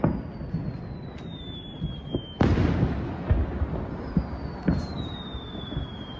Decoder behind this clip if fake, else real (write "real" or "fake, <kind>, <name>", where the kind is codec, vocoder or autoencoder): real